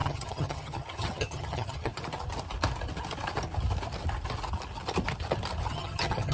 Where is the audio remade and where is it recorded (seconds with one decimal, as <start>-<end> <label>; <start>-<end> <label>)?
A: 0.0-1.9 remade; 1.9-5.7 recorded; 5.7-6.3 remade